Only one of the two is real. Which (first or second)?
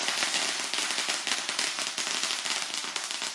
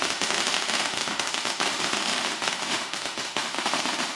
first